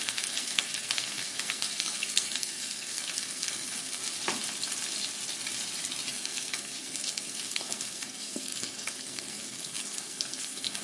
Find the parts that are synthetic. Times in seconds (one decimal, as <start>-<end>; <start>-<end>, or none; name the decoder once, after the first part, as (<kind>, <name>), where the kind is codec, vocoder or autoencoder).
0.0-4.0 (codec, SNAC); 6.1-10.8